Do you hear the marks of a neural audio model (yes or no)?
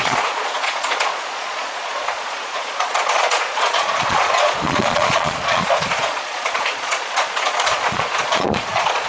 yes